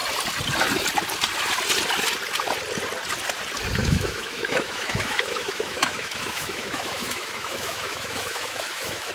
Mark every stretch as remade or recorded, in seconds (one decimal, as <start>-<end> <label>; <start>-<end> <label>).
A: 0.0-3.8 recorded; 3.8-9.1 remade